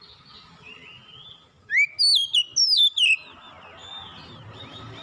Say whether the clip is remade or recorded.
recorded